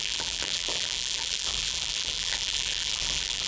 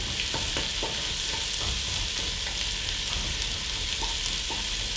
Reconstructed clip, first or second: first